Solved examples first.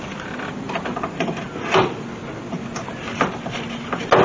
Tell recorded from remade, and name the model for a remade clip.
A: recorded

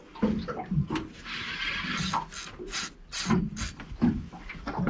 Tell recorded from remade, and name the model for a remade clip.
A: recorded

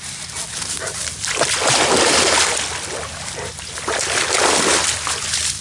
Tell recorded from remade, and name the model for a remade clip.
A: recorded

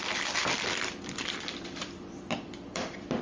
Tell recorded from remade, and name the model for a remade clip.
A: remade, vocoder, BigVGAN v2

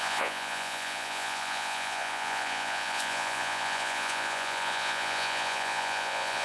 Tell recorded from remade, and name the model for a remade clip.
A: remade, vocoder, Vocos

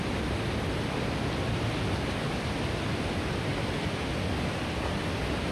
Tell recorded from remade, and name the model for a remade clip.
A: recorded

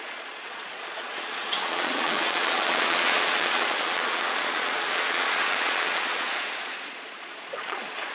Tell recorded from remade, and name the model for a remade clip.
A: remade, vocoder, Vocos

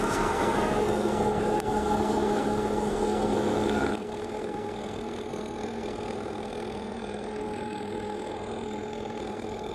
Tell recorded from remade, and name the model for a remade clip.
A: remade, codec, SNAC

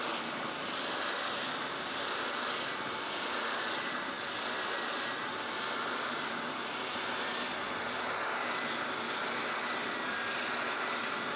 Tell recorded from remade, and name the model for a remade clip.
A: recorded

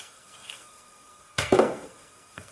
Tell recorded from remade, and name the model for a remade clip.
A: remade, codec, SNAC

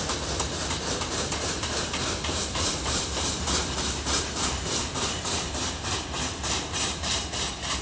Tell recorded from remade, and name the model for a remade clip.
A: remade, vocoder, BigVGAN v2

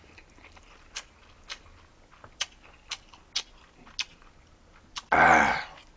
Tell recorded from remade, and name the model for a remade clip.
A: recorded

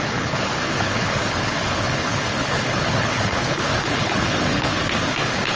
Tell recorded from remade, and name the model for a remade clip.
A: remade, codec, HILCodec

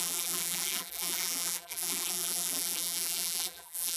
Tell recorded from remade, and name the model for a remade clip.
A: remade, vocoder, BigVGAN v2